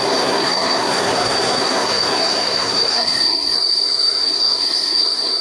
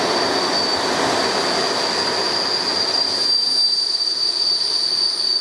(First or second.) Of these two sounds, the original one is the second